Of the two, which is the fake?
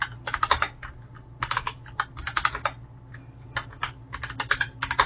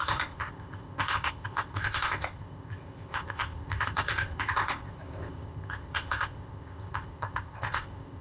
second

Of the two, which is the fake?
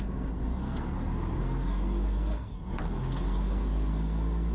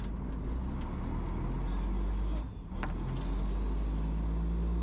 first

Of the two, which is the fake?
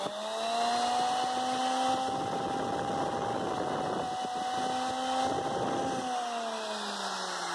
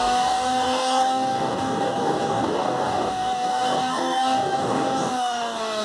second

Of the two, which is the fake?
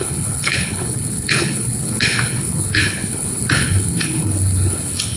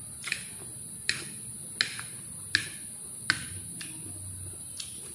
first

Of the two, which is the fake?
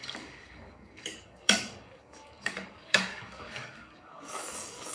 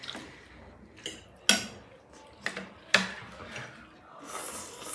first